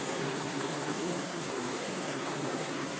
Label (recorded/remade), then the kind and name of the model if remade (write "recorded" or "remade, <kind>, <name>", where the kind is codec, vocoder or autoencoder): remade, codec, SNAC